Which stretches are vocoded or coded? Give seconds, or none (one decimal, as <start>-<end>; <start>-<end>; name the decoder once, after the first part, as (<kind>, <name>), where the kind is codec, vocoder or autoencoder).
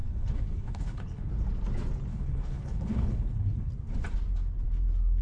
0.0-1.3 (codec, HILCodec); 2.1-3.7